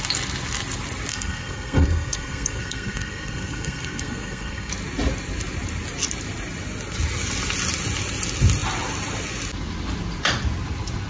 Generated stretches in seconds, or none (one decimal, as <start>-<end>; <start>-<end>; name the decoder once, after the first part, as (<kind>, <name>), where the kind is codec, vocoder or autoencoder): 1.1-4.7 (codec, SNAC)